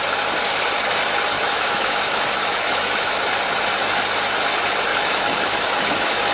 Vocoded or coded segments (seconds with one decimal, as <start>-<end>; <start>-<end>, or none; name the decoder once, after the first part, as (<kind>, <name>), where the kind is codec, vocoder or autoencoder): 1.3-3.2 (autoencoder, DAC-VAE); 4.9-6.3